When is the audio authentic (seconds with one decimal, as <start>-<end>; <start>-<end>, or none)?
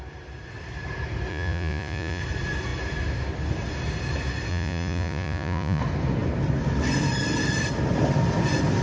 0.0-1.3; 2.2-4.5; 5.8-8.8